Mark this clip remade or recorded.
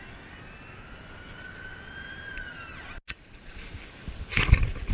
recorded